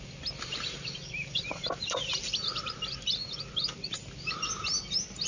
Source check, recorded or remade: recorded